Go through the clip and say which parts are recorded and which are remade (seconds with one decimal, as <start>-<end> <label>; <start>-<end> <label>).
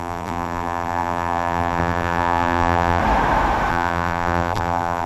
0.0-3.0 remade; 3.0-3.7 recorded; 3.7-5.1 remade